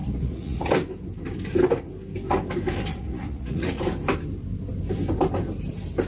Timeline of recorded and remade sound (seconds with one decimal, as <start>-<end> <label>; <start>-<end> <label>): 0.0-0.7 remade; 0.7-2.9 recorded; 2.9-3.8 remade; 3.8-6.1 recorded